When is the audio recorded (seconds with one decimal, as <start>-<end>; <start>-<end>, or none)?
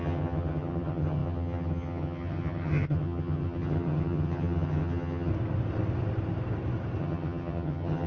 5.3-7.0